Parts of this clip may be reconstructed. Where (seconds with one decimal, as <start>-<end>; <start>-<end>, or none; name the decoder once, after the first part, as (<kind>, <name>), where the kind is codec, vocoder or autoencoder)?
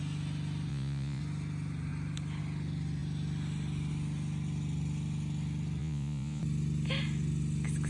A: 0.7-1.2 (vocoder, Vocos); 5.8-6.4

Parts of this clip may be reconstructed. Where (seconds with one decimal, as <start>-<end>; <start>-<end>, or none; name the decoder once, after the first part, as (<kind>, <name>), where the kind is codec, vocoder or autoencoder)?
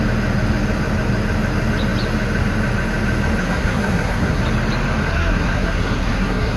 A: 3.4-4.4 (codec, SNAC); 5.0-6.6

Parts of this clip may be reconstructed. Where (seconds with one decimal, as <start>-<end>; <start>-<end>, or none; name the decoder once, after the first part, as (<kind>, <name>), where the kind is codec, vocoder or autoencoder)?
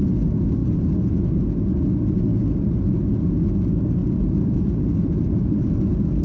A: 4.0-5.7 (vocoder, BigVGAN v2)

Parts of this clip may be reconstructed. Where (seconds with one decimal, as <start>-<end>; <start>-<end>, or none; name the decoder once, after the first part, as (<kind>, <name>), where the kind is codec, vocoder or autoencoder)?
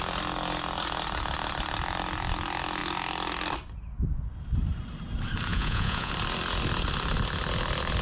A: 5.5-6.1 (vocoder, Vocos)